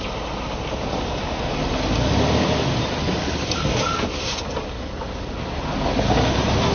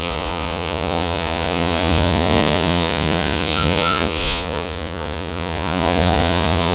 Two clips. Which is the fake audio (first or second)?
second